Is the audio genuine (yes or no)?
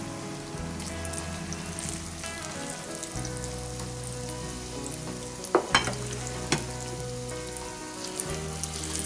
yes